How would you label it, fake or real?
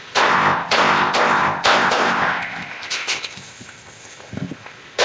fake